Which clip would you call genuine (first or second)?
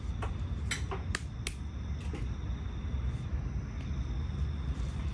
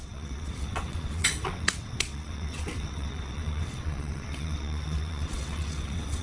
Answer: first